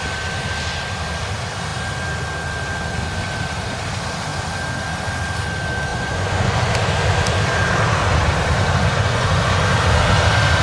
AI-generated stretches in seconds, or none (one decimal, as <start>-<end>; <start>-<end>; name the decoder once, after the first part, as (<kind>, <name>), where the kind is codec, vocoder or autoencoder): 5.9-6.7 (vocoder, Vocos); 8.8-9.6